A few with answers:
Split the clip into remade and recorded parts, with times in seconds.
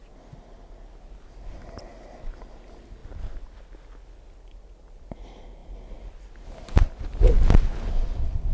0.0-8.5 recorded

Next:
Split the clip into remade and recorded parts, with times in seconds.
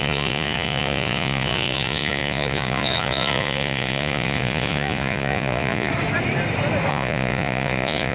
0.0-5.9 remade; 5.9-6.9 recorded; 6.9-8.1 remade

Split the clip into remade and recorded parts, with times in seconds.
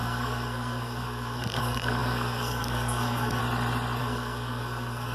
0.0-3.4 remade; 3.4-4.0 recorded; 4.0-5.1 remade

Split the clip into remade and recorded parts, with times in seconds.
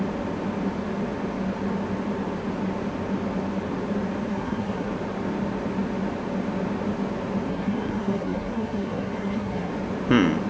0.0-4.3 recorded; 4.3-4.9 remade; 4.9-7.5 recorded; 7.5-9.7 remade; 9.7-10.5 recorded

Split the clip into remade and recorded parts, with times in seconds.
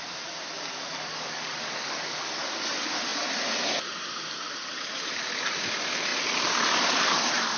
0.0-0.9 recorded; 0.9-2.4 remade; 2.4-7.6 recorded